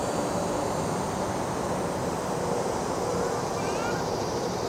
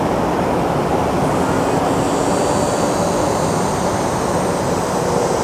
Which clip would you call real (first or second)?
second